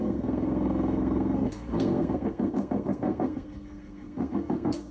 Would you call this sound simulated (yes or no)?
yes